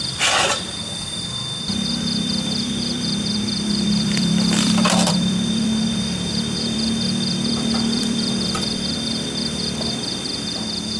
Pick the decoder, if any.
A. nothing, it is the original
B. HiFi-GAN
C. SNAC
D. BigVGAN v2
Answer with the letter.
D